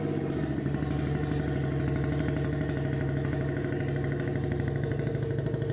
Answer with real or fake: real